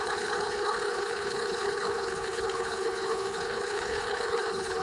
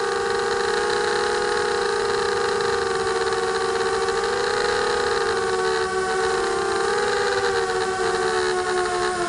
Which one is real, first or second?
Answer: second